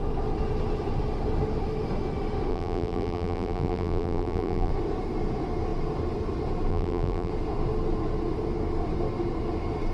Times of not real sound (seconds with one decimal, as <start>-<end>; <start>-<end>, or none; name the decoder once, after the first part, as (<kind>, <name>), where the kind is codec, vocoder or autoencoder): 2.5-4.7 (vocoder, BigVGAN v2); 6.7-7.3